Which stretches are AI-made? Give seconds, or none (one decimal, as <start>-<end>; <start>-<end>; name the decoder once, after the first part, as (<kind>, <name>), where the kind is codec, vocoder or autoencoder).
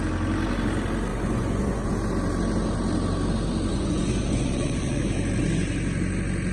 1.1-1.9 (vocoder, Vocos); 3.7-5.0